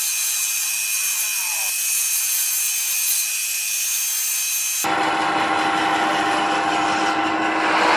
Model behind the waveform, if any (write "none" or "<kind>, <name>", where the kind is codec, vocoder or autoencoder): none